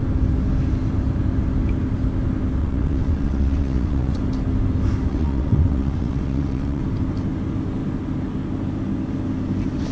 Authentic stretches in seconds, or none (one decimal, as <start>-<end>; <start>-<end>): 0.0-2.6; 4.2-5.1; 6.8-9.9